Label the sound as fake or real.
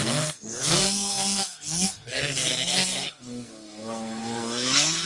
fake